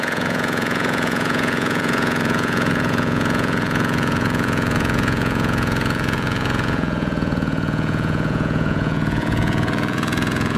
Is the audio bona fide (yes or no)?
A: no